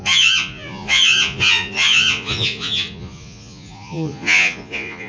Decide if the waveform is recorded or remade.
remade